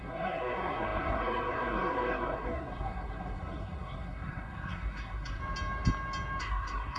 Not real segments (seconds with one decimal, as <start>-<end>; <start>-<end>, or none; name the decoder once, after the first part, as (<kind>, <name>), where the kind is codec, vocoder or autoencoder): 0.0-5.4 (codec, SNAC); 6.4-7.0

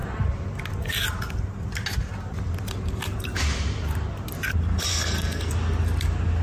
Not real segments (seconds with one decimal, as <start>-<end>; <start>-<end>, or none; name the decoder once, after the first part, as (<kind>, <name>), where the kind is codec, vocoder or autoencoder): 4.9-5.5 (codec, SNAC)

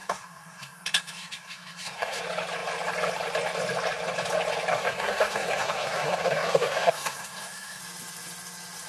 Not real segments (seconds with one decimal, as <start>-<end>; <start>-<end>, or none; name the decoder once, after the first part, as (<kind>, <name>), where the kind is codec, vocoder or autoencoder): 0.0-2.2 (codec, SNAC); 4.7-7.8